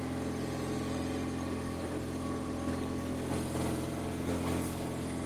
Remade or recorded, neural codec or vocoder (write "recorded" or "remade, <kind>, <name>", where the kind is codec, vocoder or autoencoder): recorded